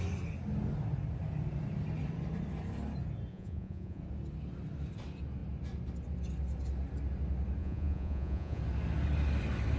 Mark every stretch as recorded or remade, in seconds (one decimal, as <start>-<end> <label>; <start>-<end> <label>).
0.0-3.3 recorded; 3.3-4.0 remade; 4.0-7.6 recorded; 7.6-8.6 remade; 8.6-9.8 recorded